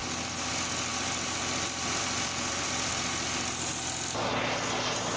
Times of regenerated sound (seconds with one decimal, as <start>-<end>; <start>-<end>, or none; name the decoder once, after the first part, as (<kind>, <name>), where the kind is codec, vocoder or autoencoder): 0.9-2.9 (vocoder, BigVGAN v2)